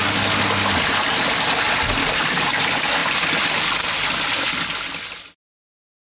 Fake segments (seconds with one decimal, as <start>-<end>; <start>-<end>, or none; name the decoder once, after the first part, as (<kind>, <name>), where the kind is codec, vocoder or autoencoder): none